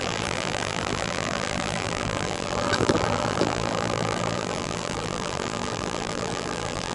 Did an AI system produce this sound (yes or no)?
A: yes